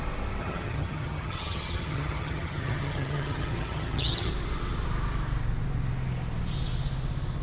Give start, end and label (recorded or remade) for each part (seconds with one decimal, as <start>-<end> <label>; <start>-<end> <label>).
0.0-0.4 recorded; 0.4-4.3 remade; 4.3-7.4 recorded